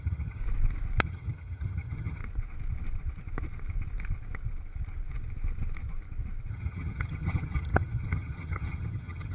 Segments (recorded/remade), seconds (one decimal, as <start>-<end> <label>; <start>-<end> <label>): 0.0-0.4 remade; 0.4-1.0 recorded; 1.0-2.2 remade; 2.2-6.5 recorded; 6.5-9.3 remade